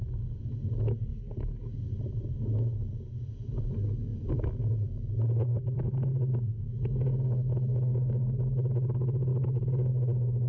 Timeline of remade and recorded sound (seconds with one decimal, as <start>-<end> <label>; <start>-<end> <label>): 0.0-4.1 recorded; 4.1-4.7 remade; 4.7-10.5 recorded